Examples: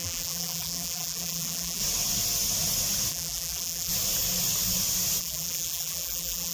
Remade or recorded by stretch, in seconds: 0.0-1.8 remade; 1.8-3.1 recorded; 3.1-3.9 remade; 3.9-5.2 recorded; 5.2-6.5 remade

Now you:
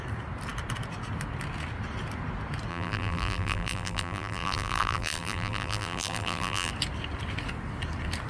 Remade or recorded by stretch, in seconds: 0.0-2.7 recorded; 2.7-6.7 remade; 6.7-8.3 recorded

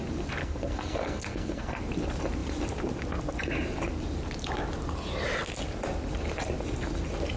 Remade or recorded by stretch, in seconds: 0.0-0.4 recorded; 0.4-1.8 remade; 1.8-7.4 recorded

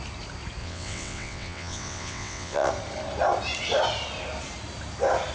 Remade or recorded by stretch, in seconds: 0.0-0.6 recorded; 0.6-2.7 remade; 2.7-5.3 recorded

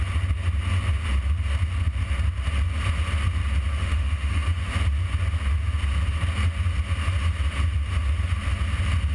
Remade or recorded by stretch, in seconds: 0.0-3.7 recorded; 3.7-4.7 remade; 4.7-9.1 recorded

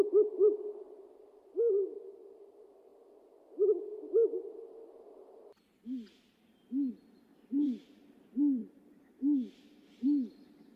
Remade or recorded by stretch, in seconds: 0.0-2.9 remade; 2.9-6.9 recorded; 6.9-10.8 remade

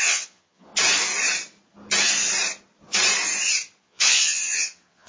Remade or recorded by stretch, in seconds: 0.0-0.7 remade; 0.7-3.8 recorded; 3.8-5.1 remade